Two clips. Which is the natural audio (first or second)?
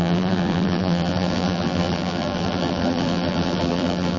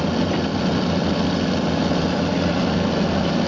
second